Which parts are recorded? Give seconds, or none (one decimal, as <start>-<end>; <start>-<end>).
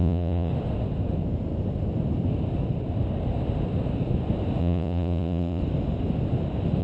0.5-4.6; 5.6-6.8